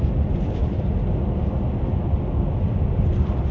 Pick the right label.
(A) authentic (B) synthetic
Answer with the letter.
A